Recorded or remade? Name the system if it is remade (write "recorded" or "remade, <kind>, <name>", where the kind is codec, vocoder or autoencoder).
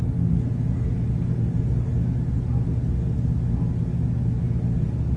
recorded